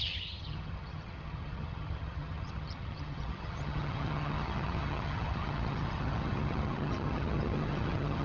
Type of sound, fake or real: fake